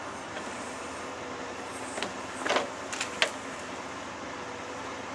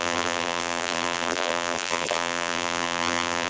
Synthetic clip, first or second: second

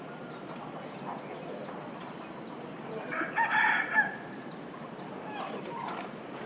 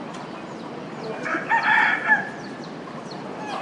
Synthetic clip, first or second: first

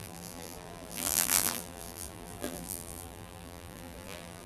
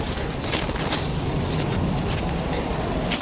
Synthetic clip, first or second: first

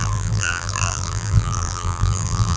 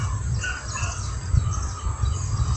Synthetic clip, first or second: first